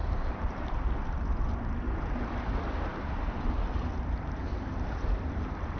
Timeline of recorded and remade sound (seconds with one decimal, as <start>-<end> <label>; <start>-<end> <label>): 0.0-0.5 remade; 0.5-5.8 recorded